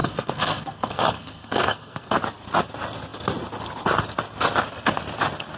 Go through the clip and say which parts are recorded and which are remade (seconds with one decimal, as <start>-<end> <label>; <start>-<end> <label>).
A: 0.0-2.1 remade; 2.1-5.6 recorded